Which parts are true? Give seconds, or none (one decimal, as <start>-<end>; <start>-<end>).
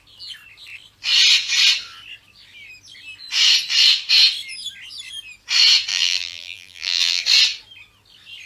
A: 0.0-5.9; 7.2-8.5